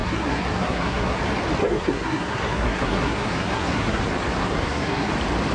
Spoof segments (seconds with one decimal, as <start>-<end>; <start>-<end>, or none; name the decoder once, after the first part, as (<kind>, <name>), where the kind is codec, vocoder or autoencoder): 0.0-1.2 (codec, SNAC); 1.6-4.0; 4.4-5.1